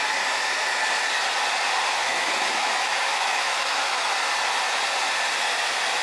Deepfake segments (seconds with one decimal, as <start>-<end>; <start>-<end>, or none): 2.0-4.1